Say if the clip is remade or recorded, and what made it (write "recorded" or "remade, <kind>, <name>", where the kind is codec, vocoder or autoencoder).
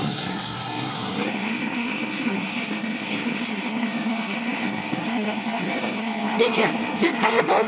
remade, codec, SNAC